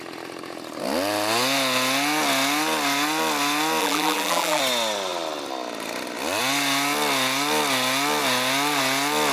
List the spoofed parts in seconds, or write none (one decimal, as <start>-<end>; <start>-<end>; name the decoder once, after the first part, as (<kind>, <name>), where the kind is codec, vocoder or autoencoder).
3.8-4.6 (vocoder, BigVGAN v2)